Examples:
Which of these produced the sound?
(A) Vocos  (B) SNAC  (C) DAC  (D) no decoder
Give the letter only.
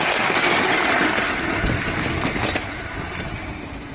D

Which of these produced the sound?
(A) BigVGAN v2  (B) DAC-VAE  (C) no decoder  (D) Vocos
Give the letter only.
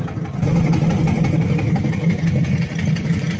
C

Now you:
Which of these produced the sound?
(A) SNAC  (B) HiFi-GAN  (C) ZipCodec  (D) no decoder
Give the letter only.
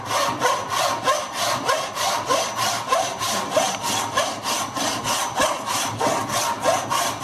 D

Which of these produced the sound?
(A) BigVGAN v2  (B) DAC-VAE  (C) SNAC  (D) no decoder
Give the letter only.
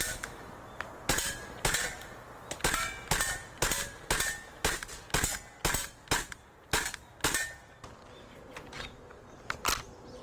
D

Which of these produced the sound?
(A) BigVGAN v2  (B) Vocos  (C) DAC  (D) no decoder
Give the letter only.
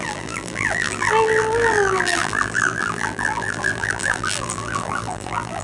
A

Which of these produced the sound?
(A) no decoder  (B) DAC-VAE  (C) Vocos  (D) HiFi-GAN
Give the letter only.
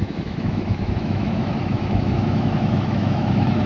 B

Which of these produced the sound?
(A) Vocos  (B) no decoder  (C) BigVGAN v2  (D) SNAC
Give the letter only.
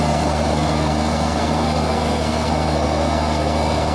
D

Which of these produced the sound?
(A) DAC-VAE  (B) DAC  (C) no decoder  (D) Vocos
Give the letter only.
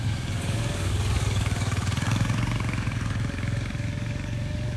B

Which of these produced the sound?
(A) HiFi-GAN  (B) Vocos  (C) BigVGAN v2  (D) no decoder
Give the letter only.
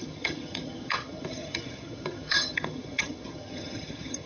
A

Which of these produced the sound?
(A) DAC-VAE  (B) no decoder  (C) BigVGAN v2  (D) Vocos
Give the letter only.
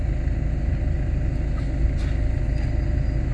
B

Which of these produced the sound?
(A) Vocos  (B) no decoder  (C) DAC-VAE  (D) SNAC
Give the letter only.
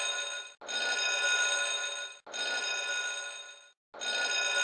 B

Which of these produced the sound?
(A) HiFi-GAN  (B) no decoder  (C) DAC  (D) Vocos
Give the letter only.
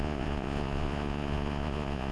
D